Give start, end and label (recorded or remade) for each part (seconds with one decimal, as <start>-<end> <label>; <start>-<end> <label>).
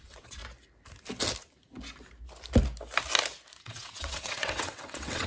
0.0-0.4 remade; 0.4-3.6 recorded; 3.6-5.3 remade